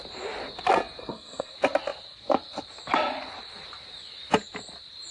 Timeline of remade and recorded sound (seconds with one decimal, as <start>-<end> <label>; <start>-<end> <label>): 0.0-1.0 recorded; 1.0-1.5 remade; 1.5-5.1 recorded